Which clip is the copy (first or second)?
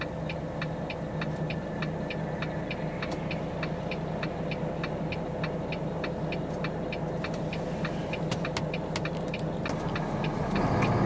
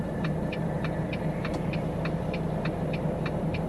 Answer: second